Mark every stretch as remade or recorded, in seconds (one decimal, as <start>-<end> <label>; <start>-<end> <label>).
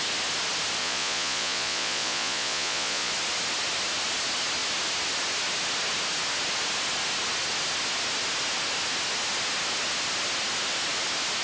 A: 0.0-0.8 recorded; 0.8-3.1 remade; 3.1-11.4 recorded